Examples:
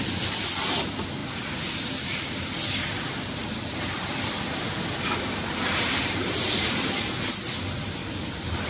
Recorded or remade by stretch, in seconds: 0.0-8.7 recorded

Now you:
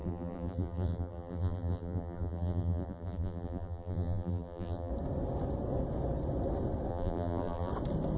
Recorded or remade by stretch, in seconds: 0.0-4.9 remade; 4.9-6.9 recorded; 6.9-7.7 remade; 7.7-8.2 recorded

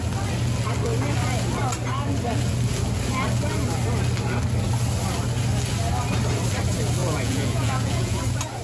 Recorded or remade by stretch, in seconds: 0.0-7.0 recorded; 7.0-8.2 remade; 8.2-8.6 recorded

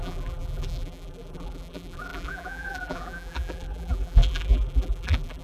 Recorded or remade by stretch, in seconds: 0.0-5.4 remade

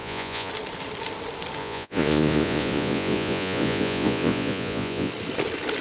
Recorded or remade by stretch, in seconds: 0.0-0.5 remade; 0.5-1.6 recorded; 1.6-5.1 remade; 5.1-5.8 recorded

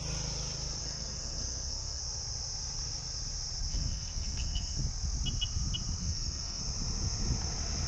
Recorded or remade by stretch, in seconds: 0.0-0.8 recorded; 0.8-2.0 remade; 2.0-3.7 recorded; 3.7-4.8 remade; 4.8-6.0 recorded; 6.0-6.6 remade; 6.6-7.9 recorded

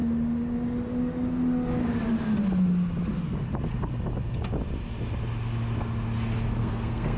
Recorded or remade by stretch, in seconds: 0.0-6.6 recorded; 6.6-7.2 remade

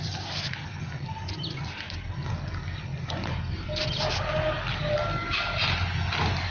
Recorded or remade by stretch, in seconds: 0.0-6.5 recorded